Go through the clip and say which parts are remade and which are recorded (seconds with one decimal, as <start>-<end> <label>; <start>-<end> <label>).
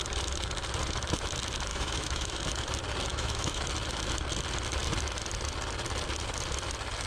0.0-1.7 recorded; 1.7-2.4 remade; 2.4-3.1 recorded; 3.1-3.6 remade; 3.6-7.1 recorded